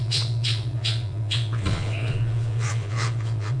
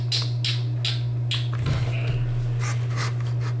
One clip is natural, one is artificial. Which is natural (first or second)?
second